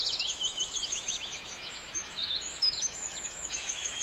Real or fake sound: fake